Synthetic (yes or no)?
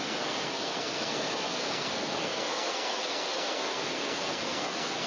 yes